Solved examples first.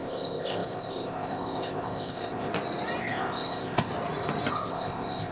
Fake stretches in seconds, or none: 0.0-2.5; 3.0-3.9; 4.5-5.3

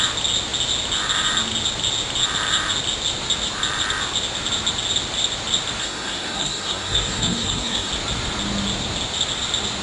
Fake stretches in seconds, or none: 5.8-7.9

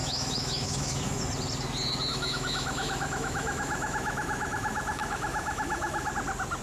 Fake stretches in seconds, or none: 0.0-1.2; 2.1-6.1

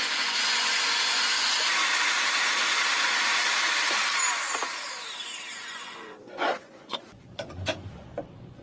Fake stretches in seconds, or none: 0.0-1.8; 5.5-8.6

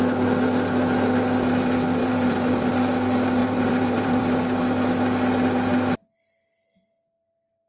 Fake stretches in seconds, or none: 2.0-2.7; 3.4-4.2

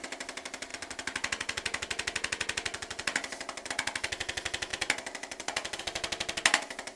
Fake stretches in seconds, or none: 4.7-5.8

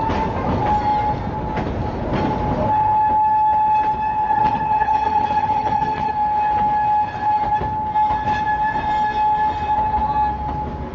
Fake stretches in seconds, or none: 4.3-6.1

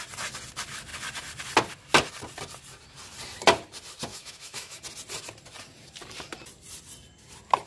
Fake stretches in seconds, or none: 4.1-4.8